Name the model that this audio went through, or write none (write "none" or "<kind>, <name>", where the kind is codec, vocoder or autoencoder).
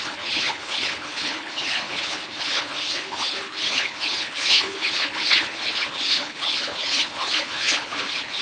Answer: codec, HILCodec